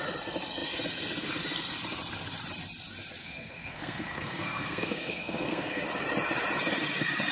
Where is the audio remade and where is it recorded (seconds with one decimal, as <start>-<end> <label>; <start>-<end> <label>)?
0.0-3.2 recorded; 3.2-5.8 remade; 5.8-7.3 recorded